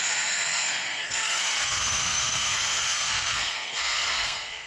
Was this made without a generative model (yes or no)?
no